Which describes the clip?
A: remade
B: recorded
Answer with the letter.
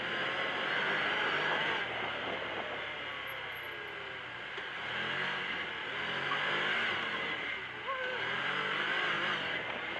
B